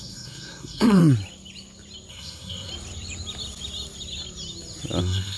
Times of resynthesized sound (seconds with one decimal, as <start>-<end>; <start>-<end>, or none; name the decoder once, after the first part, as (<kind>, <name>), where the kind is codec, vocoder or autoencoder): 0.0-1.0 (codec, SNAC); 2.1-2.7; 5.0-5.4